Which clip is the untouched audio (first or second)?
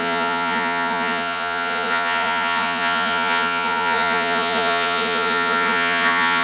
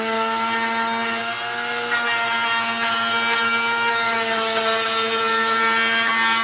second